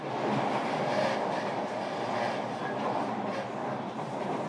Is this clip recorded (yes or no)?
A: no